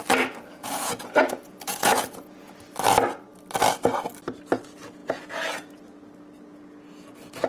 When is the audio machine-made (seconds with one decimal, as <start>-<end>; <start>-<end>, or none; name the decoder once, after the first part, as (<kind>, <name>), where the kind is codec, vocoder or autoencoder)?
0.6-2.5 (vocoder, Vocos); 5.0-5.8